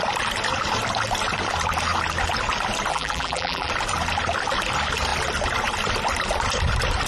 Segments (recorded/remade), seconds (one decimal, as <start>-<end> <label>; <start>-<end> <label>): 0.0-2.9 recorded; 2.9-3.7 remade; 3.7-7.1 recorded